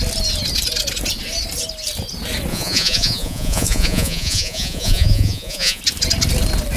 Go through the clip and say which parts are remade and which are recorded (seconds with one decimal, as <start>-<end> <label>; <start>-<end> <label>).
0.0-2.5 recorded; 2.5-5.8 remade; 5.8-6.8 recorded